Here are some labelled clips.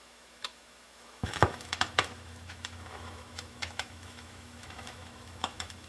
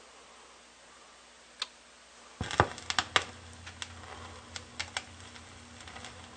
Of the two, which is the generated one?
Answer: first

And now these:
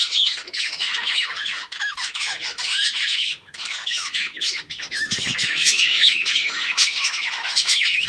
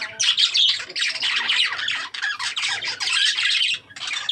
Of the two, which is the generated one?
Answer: first